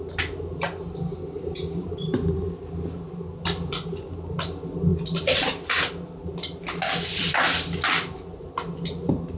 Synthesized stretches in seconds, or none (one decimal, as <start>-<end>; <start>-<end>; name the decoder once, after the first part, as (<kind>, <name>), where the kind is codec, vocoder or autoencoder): 1.8-3.2 (vocoder, BigVGAN v2)